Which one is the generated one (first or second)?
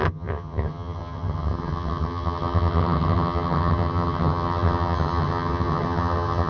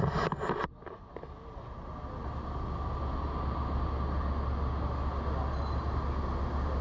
first